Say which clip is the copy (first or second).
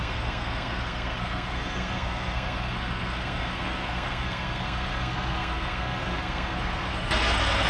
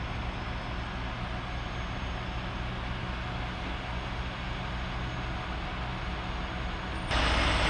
first